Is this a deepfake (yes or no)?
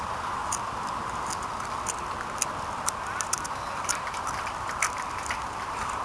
no